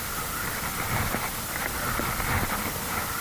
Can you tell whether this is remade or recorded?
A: recorded